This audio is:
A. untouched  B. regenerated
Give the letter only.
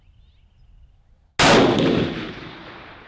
A